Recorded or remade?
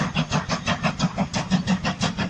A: recorded